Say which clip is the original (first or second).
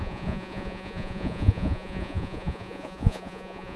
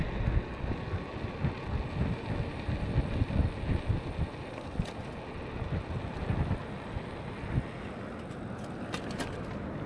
second